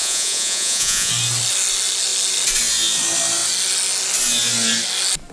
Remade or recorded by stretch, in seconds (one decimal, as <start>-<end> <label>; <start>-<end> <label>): 0.0-1.1 remade; 1.1-5.3 recorded